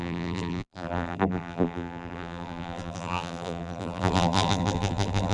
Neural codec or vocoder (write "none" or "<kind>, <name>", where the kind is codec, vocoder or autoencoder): vocoder, BigVGAN v2